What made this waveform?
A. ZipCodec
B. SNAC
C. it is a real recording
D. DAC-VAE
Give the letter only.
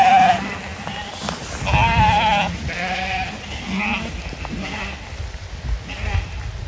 C